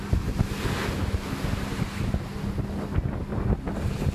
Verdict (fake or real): real